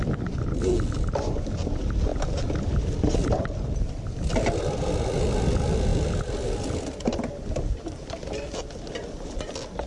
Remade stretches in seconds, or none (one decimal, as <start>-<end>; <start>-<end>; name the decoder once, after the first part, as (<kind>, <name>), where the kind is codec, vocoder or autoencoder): none